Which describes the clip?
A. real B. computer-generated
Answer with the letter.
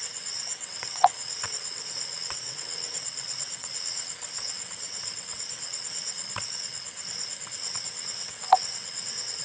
B